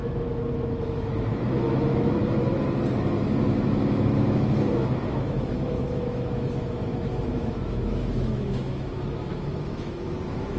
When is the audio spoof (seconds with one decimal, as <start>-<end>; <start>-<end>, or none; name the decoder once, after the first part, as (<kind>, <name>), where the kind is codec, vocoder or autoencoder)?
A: 0.0-2.2 (autoencoder, DAC-VAE); 3.8-10.6